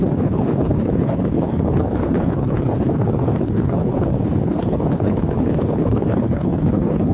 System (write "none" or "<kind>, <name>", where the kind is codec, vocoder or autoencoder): codec, HILCodec